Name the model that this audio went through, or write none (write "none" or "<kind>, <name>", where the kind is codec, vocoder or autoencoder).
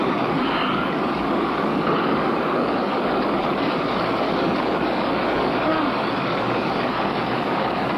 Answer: codec, DAC